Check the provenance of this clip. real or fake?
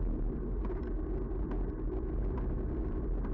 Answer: real